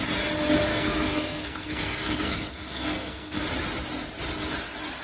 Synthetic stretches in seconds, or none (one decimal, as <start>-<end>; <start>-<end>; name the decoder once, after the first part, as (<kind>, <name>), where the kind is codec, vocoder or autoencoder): 0.7-3.4 (codec, SNAC)